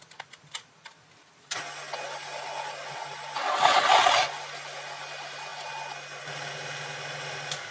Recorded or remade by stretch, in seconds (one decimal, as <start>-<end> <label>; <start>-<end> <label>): 0.0-7.7 recorded